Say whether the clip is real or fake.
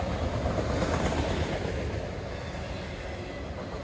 real